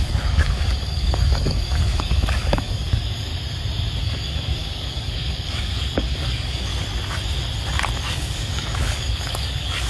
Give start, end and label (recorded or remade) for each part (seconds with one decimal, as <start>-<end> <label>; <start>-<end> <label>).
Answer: 0.0-3.3 remade; 3.3-4.0 recorded; 4.0-6.7 remade; 6.7-8.1 recorded; 8.1-9.9 remade